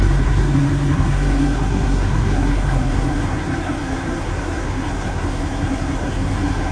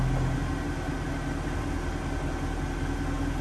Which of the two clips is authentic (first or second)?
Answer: second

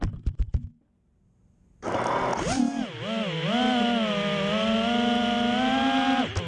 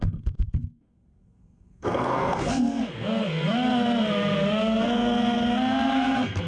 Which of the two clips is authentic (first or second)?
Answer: first